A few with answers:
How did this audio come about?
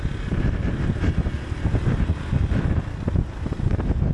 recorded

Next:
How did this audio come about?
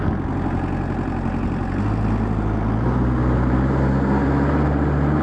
recorded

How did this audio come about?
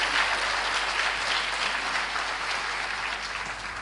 recorded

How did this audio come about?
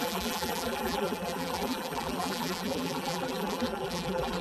remade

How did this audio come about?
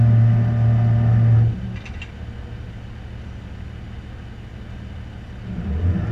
recorded